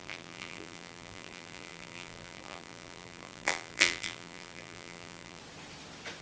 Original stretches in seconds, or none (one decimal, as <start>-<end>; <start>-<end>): 5.4-6.2